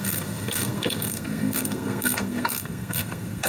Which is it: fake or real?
fake